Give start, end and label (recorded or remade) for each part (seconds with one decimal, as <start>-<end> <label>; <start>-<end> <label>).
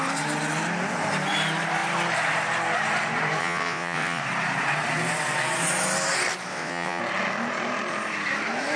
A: 0.0-3.4 recorded; 3.4-4.2 remade; 4.2-6.5 recorded; 6.5-7.0 remade; 7.0-8.8 recorded